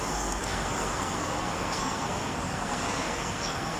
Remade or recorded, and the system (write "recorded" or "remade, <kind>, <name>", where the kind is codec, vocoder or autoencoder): remade, codec, SNAC